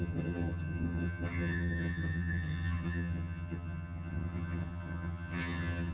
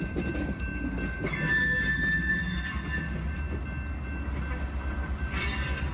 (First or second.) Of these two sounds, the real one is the second